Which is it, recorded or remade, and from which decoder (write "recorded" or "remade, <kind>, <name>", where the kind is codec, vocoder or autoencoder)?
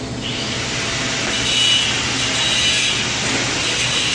recorded